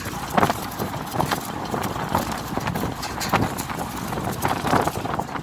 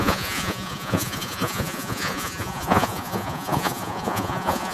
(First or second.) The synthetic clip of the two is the second